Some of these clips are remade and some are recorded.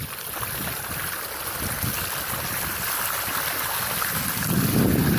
recorded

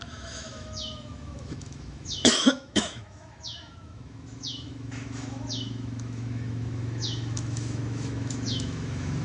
remade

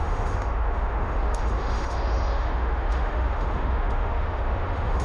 remade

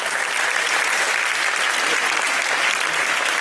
recorded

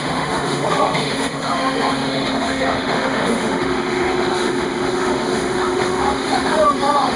remade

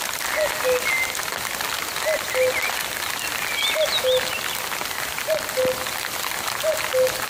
recorded